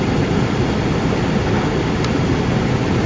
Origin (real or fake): real